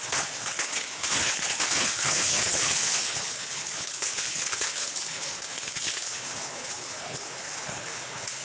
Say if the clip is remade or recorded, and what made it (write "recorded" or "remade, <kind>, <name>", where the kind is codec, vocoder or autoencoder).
remade, codec, HILCodec